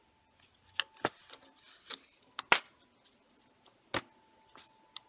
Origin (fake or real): real